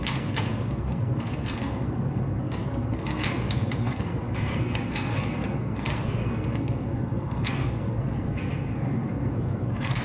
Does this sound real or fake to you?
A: fake